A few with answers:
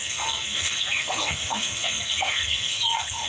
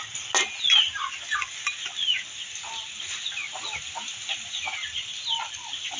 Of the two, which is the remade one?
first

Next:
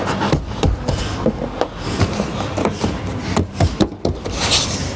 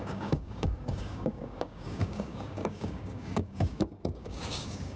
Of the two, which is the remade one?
second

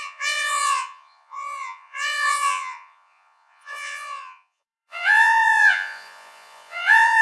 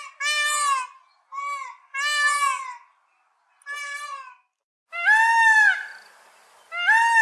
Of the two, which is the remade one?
first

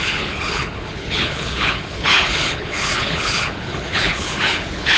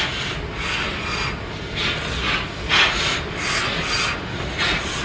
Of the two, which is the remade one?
first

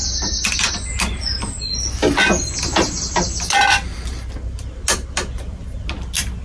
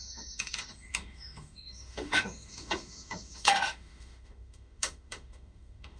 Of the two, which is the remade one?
second